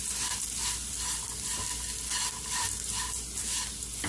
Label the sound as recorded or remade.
recorded